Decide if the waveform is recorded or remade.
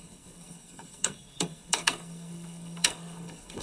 remade